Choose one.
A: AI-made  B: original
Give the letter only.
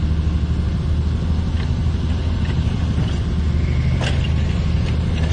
B